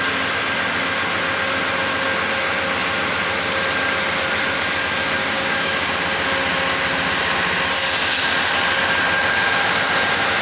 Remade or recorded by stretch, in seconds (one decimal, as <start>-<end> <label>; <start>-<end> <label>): 0.0-5.2 recorded; 5.2-5.9 remade; 5.9-10.4 recorded